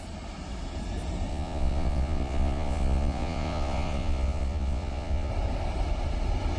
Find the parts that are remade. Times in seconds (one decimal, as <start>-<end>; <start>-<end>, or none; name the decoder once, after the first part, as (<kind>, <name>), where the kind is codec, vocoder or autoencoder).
1.3-5.3 (vocoder, Vocos)